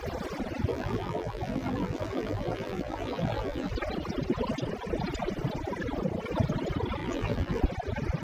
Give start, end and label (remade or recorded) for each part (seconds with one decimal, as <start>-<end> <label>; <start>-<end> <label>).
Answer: 0.0-0.7 recorded; 0.7-3.7 remade; 3.7-7.0 recorded; 7.0-7.6 remade; 7.6-8.2 recorded